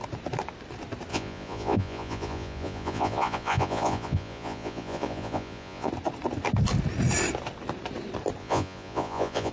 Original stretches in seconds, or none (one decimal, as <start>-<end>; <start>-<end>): 0.0-1.1; 5.9-8.4